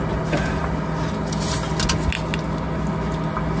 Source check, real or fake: real